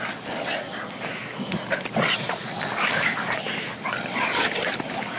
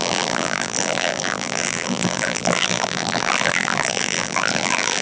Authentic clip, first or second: first